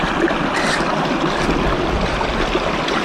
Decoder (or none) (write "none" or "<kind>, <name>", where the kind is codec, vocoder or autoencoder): none